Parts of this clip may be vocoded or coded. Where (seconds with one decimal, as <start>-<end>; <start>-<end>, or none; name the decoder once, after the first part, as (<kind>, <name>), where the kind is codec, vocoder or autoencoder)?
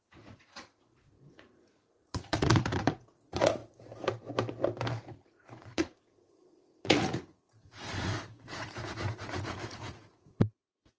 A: 0.0-3.6 (vocoder, Vocos); 5.0-11.0